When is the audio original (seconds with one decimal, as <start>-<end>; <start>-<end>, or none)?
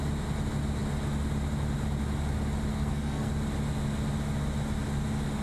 0.0-2.7; 3.3-5.4